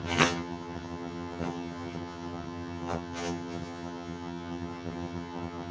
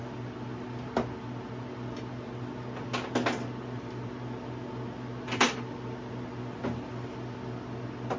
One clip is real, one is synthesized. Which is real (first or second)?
second